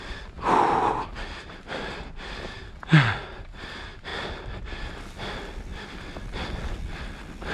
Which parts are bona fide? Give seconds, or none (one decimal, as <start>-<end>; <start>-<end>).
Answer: 0.0-7.5